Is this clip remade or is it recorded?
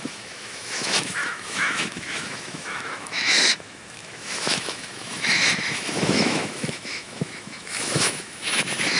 remade